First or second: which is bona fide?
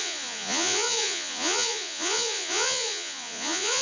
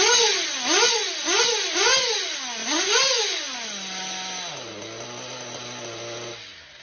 second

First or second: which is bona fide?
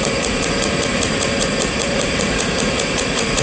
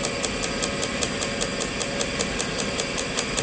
second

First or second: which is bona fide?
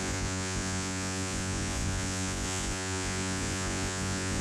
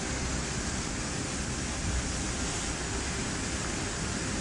second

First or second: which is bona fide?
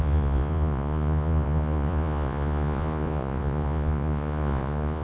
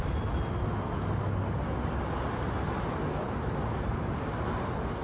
second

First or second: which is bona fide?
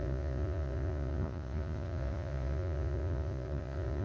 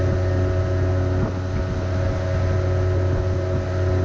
second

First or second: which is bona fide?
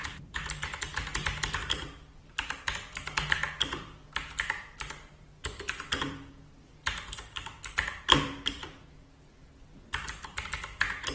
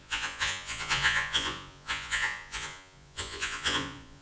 first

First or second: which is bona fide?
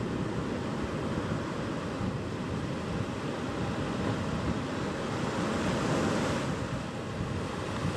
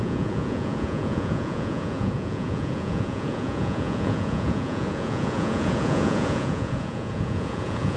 first